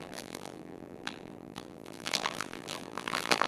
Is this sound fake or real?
fake